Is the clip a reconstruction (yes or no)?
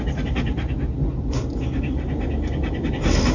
no